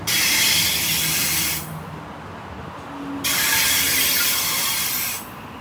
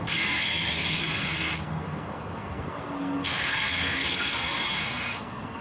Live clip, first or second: first